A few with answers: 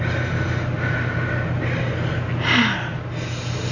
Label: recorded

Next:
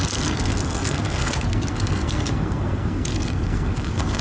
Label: remade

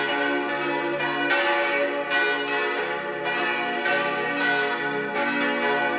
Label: recorded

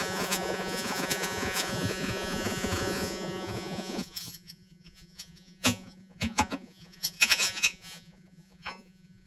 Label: remade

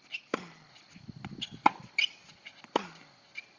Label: recorded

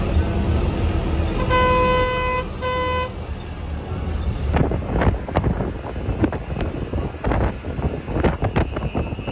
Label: recorded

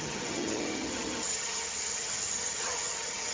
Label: remade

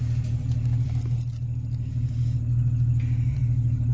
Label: recorded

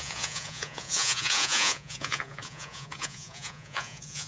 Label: remade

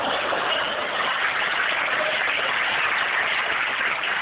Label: recorded